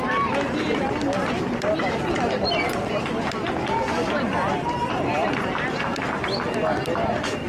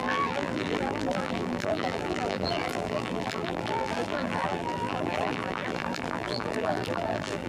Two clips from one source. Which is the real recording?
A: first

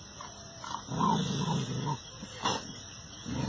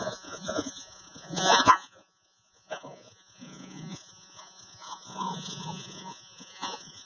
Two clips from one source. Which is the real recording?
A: first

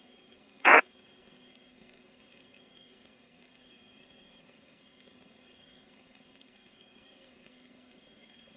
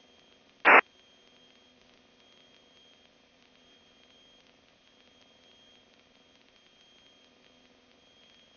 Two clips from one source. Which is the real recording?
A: second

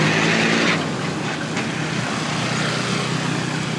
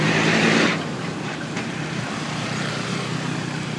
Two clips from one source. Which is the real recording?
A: first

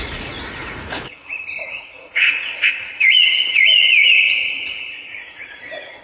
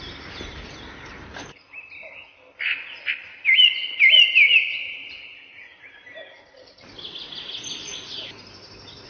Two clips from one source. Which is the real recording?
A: second